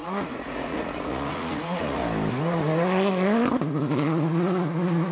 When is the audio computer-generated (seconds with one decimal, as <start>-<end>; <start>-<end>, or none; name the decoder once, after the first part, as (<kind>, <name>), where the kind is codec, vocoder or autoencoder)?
0.0-2.0 (vocoder, Vocos)